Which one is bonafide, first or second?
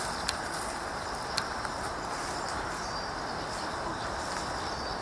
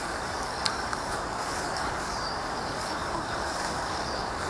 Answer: first